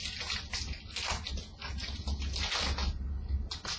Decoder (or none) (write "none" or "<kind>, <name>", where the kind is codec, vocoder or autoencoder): none